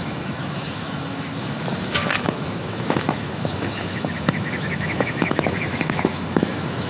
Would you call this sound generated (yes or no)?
yes